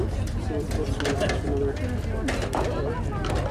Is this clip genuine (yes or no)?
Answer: yes